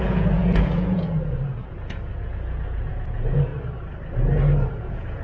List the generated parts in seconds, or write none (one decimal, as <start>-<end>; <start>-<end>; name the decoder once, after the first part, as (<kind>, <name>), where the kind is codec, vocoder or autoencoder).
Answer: 0.0-3.5 (vocoder, Vocos); 4.7-5.2